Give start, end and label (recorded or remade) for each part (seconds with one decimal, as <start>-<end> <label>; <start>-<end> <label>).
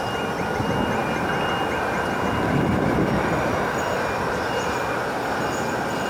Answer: 0.0-4.8 recorded; 4.8-5.4 remade; 5.4-6.1 recorded